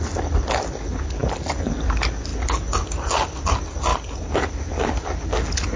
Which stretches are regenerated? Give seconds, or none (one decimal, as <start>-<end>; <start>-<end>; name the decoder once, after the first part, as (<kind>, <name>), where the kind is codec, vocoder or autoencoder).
none